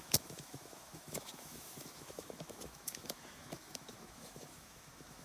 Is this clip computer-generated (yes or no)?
yes